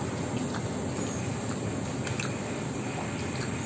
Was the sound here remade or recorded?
recorded